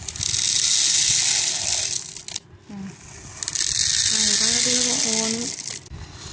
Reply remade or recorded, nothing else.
recorded